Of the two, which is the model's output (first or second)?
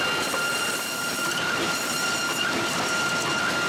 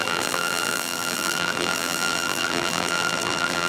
second